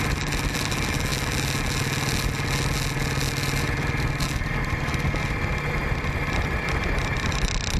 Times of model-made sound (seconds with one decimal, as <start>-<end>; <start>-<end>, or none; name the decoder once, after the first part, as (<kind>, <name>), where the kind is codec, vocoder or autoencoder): none